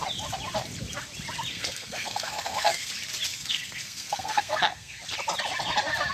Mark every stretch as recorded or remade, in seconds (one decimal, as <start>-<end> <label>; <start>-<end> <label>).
0.0-1.5 recorded; 1.5-2.9 remade; 2.9-3.3 recorded; 3.3-5.0 remade; 5.0-6.1 recorded

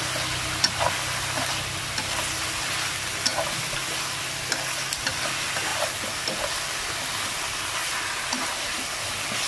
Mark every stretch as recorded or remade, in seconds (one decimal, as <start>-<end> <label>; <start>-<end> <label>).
0.0-9.5 recorded

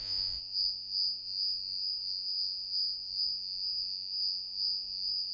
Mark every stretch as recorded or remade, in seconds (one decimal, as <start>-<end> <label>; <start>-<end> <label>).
0.0-5.3 remade